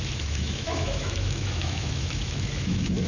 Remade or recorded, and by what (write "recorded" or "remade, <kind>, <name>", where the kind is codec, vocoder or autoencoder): remade, autoencoder, DAC-VAE